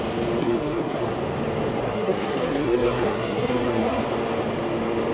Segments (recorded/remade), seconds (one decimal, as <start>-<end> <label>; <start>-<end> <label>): 0.0-0.4 recorded; 0.4-1.1 remade; 1.1-1.8 recorded; 1.8-4.0 remade; 4.0-5.1 recorded